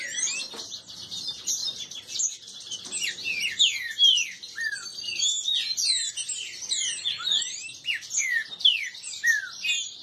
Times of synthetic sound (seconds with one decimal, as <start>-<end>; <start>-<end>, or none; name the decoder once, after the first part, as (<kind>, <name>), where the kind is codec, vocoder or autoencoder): none